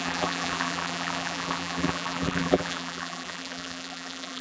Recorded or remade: remade